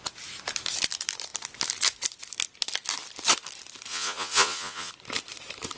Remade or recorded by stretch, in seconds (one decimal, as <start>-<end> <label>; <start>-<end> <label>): 0.0-3.9 recorded; 3.9-4.9 remade; 4.9-5.8 recorded